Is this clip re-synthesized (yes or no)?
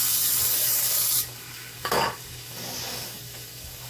yes